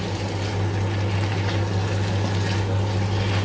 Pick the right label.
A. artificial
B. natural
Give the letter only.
B